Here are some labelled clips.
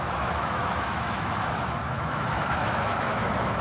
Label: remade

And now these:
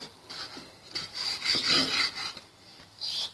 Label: recorded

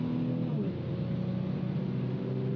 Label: recorded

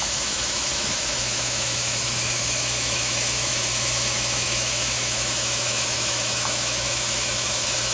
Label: remade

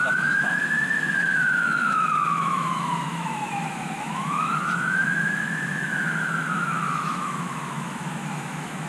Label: remade